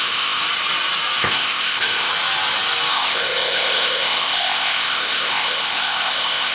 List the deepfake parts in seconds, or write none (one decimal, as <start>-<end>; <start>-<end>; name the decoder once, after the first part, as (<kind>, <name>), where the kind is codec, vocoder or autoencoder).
0.0-0.4 (codec, ZipCodec); 1.2-2.1; 2.9-6.5